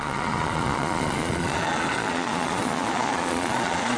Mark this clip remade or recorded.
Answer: remade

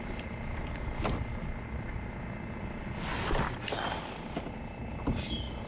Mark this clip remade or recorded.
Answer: recorded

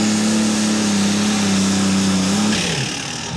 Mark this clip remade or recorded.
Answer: recorded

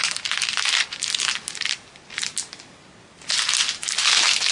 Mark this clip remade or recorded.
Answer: recorded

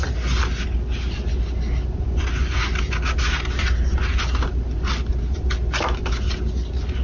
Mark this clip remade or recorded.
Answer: recorded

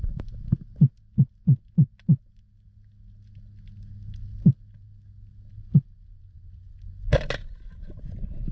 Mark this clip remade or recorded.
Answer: recorded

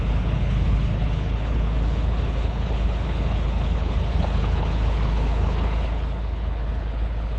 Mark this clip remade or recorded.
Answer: remade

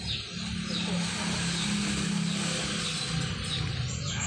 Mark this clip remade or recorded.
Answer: recorded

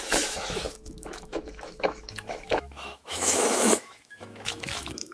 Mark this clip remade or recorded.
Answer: remade